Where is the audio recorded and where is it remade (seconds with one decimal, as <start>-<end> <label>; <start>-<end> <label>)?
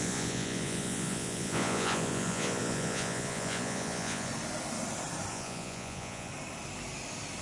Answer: 0.0-4.3 remade; 4.3-5.3 recorded; 5.3-6.3 remade; 6.3-7.4 recorded